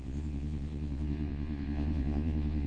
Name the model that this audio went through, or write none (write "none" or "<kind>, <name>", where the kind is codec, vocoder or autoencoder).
vocoder, Vocos